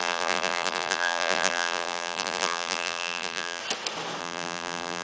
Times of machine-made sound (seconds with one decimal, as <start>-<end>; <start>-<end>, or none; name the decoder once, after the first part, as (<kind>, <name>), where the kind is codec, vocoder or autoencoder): 0.0-3.6 (vocoder, BigVGAN v2); 4.2-5.0